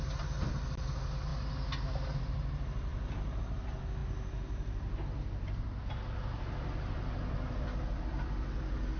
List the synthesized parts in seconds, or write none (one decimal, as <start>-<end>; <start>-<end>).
none